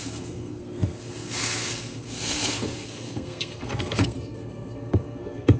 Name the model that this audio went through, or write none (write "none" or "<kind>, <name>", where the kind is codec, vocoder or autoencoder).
codec, SNAC